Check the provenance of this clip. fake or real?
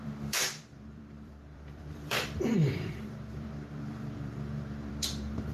fake